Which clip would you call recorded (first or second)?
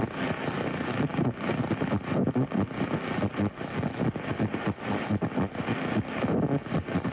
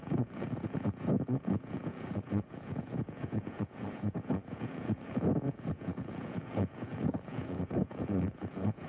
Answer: first